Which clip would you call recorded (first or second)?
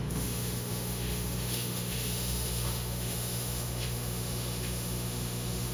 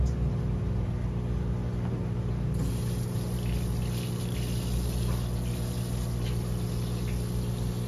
second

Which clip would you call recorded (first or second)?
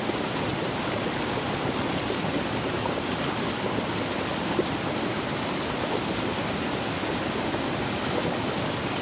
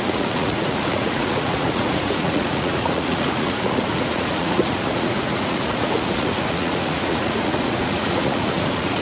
first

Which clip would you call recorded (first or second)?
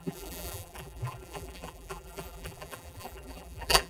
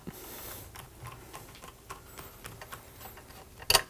second